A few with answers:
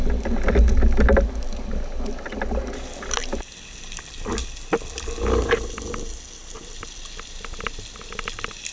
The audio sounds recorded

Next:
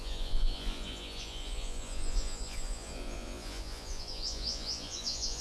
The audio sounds remade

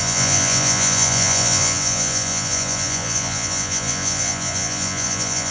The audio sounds remade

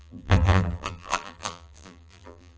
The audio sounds remade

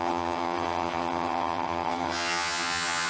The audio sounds remade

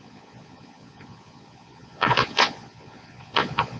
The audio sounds remade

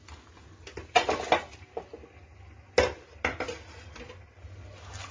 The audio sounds recorded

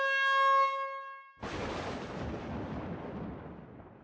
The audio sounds recorded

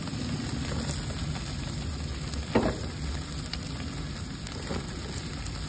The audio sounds recorded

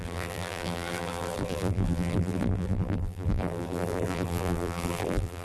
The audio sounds remade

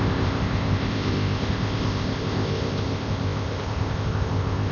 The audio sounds remade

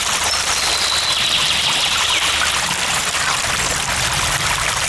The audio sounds recorded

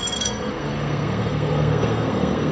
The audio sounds remade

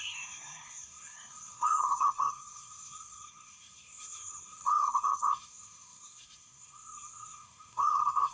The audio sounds remade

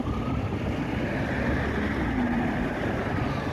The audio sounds recorded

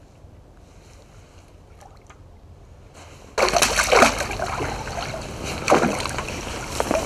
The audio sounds recorded